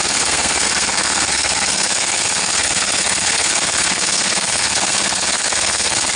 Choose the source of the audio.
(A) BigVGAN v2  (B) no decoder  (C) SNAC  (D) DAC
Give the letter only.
C